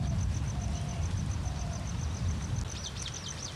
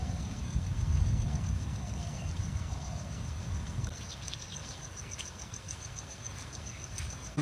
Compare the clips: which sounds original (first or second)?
first